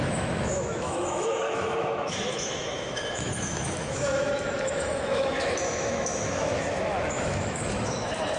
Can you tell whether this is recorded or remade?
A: remade